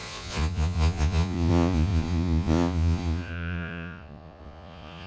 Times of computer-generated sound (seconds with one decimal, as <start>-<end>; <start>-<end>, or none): 0.0-5.1